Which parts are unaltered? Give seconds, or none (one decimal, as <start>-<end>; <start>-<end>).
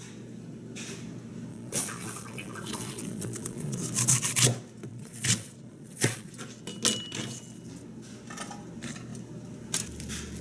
0.0-1.5; 3.8-4.9; 6.3-10.4